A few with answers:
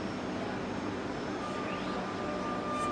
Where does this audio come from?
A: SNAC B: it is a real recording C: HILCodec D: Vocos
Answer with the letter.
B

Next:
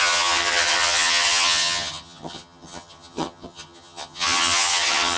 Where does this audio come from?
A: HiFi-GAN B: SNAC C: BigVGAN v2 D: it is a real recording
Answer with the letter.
A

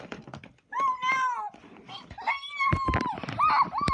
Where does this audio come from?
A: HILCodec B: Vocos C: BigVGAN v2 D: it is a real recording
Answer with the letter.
D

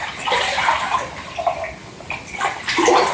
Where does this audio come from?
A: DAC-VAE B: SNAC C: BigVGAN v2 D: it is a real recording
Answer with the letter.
D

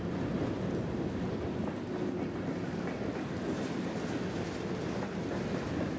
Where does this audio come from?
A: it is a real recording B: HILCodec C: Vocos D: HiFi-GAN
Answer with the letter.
A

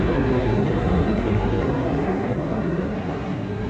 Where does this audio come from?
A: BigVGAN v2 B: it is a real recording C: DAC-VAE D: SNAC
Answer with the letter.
D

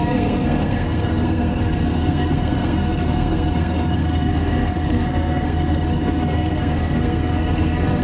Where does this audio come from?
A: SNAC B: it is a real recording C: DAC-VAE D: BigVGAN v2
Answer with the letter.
A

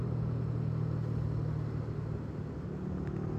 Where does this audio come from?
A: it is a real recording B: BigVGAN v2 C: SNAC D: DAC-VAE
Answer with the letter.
A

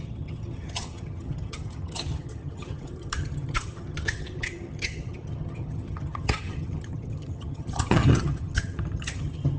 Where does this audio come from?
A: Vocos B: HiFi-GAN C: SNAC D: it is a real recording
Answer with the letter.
B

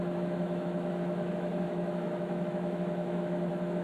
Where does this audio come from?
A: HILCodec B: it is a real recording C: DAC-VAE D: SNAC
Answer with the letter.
C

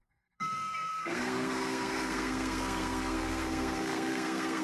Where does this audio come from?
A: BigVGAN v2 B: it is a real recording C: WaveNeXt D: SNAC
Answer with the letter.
D